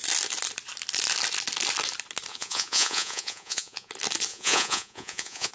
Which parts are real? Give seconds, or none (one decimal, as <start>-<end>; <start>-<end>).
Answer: 0.0-2.3; 3.9-4.3